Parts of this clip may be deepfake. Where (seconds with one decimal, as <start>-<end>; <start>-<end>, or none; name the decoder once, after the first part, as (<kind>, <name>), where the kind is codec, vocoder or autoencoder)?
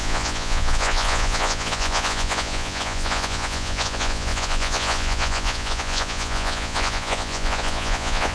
0.0-8.3 (vocoder, Vocos)